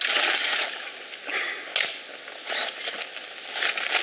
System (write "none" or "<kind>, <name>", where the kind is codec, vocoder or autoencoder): none